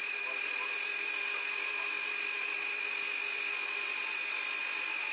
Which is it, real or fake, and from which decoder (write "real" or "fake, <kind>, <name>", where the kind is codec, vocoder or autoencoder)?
real